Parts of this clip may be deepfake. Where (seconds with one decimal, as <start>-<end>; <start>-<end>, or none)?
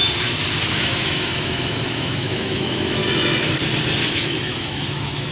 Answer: 0.6-3.0; 4.1-5.3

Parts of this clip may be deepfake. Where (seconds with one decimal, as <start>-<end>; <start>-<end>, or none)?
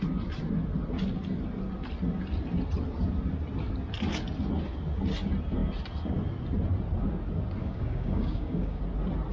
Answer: 7.6-8.8